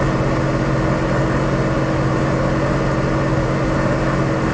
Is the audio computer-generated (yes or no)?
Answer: no